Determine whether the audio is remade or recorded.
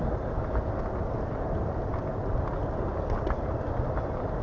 recorded